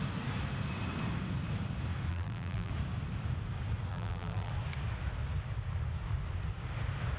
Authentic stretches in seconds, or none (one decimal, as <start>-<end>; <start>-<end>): 0.0-2.1; 2.7-3.9; 4.5-7.2

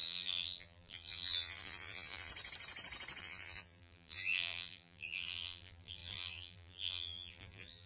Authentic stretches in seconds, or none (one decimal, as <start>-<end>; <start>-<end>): 2.3-3.2

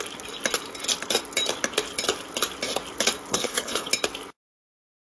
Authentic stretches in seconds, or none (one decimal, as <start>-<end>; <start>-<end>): 0.0-3.3; 3.9-5.0

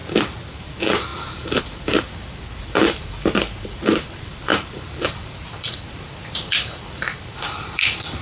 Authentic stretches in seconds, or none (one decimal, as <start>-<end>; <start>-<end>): 0.0-0.5

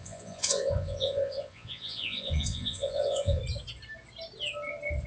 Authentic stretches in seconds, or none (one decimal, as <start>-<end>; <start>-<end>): 3.4-5.1

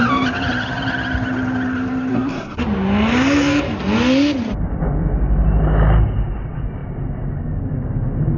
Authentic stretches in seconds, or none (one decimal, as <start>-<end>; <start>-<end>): 0.0-2.1; 2.6-8.4